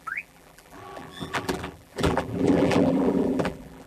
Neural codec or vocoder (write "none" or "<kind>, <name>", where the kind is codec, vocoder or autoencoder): vocoder, BigVGAN v2